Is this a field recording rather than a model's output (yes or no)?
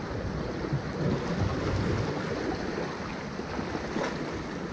yes